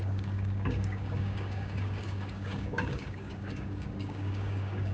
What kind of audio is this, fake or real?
fake